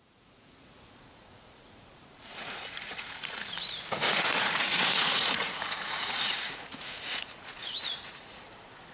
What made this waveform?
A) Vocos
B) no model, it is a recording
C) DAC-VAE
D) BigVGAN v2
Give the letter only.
A